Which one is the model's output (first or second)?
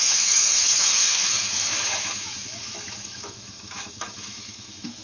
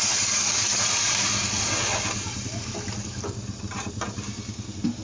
first